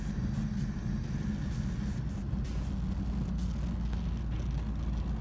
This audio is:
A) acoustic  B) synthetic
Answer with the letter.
A